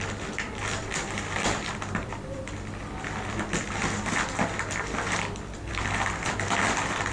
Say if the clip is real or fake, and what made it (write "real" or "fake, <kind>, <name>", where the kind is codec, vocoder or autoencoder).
real